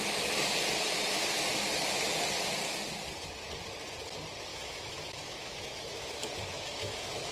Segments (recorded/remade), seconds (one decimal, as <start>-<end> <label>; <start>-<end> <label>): 0.0-4.5 recorded; 4.5-7.3 remade